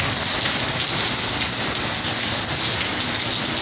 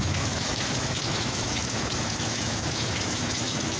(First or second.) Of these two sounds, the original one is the first